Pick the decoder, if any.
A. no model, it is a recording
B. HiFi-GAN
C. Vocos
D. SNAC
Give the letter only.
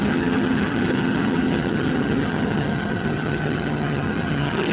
B